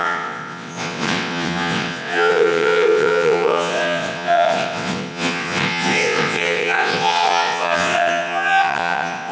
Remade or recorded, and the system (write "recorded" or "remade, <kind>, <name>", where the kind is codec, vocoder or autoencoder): remade, vocoder, WaveNeXt